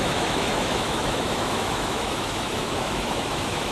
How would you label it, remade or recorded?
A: remade